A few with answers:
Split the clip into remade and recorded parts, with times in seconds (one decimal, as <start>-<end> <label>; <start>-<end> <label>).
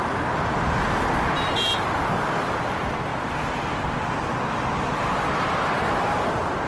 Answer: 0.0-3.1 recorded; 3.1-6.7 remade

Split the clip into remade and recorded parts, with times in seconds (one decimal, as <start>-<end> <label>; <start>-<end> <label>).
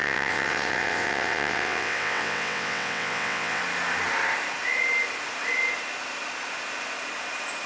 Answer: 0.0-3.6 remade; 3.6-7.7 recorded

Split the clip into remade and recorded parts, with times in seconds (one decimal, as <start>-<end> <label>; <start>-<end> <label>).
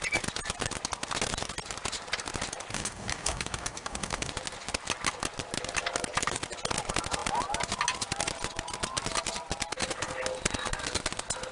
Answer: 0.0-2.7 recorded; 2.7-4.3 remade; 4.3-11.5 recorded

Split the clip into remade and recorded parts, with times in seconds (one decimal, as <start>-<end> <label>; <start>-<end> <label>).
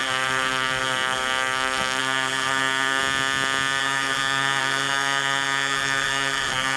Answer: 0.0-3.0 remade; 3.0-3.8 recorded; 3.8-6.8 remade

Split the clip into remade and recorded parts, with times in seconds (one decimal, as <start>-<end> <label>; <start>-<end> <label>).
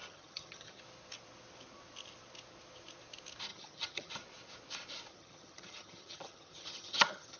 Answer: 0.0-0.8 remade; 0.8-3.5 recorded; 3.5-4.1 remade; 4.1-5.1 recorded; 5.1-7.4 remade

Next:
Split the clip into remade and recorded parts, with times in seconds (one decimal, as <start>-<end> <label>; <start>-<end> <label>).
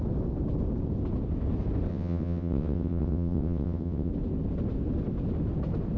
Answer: 0.0-1.9 recorded; 1.9-4.1 remade; 4.1-6.0 recorded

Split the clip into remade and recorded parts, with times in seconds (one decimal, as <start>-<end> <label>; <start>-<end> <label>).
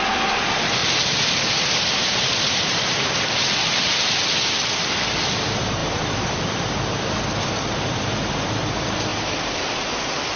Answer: 0.0-0.8 recorded; 0.8-4.0 remade; 4.0-5.8 recorded; 5.8-6.4 remade; 6.4-9.1 recorded; 9.1-9.6 remade; 9.6-10.4 recorded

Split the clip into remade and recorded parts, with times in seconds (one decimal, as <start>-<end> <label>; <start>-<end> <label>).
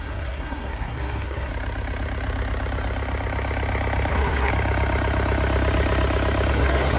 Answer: 0.0-1.5 remade; 1.5-4.1 recorded; 4.1-4.5 remade; 4.5-6.5 recorded; 6.5-7.0 remade